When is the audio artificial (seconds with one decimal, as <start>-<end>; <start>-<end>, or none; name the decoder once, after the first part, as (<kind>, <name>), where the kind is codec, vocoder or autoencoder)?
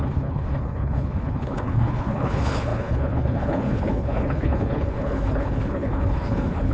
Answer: 0.0-6.7 (codec, HILCodec)